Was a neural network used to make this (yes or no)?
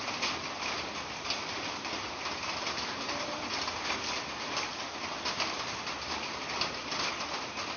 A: no